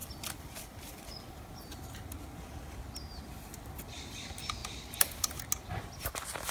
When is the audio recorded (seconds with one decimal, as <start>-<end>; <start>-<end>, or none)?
1.7-4.6; 5.4-6.5